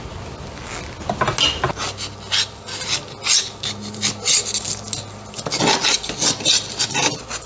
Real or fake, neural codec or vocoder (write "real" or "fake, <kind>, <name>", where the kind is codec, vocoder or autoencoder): real